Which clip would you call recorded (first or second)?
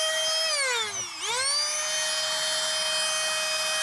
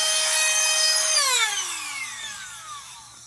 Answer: first